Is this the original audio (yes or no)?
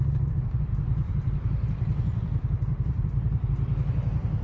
no